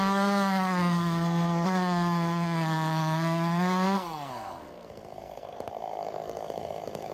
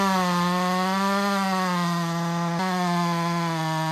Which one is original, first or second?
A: second